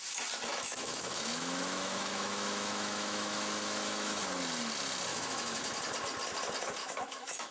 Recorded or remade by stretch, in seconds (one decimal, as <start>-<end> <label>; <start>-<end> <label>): 0.0-0.5 recorded; 0.5-4.2 remade; 4.2-5.1 recorded; 5.1-5.8 remade; 5.8-6.8 recorded; 6.8-7.5 remade

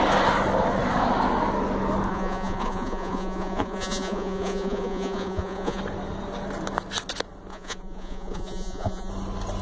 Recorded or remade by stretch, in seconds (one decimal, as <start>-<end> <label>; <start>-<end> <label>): 0.0-2.1 recorded; 2.1-5.8 remade; 5.8-7.5 recorded; 7.5-9.1 remade; 9.1-9.6 recorded

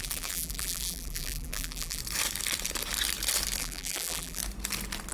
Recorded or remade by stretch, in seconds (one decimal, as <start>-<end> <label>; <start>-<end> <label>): 0.0-2.0 remade; 2.0-3.6 recorded; 3.6-4.4 remade; 4.4-5.1 recorded

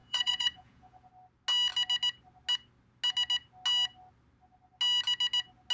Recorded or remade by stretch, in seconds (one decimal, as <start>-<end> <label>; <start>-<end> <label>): 0.0-1.1 remade; 1.1-5.7 recorded

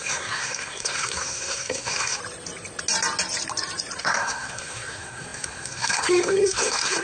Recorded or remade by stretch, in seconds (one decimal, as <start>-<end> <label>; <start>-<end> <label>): 0.0-2.2 remade; 2.2-4.0 recorded; 4.0-7.0 remade

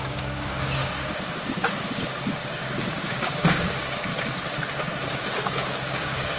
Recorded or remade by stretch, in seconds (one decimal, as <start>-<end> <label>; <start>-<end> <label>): 0.0-4.1 remade; 4.1-5.1 recorded; 5.1-6.4 remade